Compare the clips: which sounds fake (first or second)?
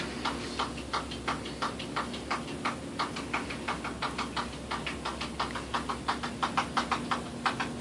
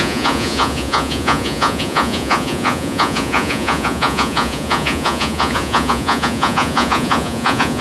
second